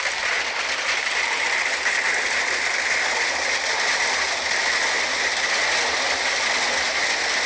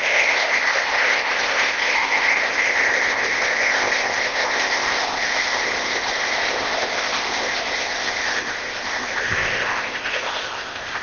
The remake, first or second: second